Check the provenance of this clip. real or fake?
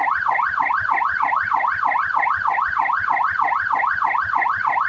real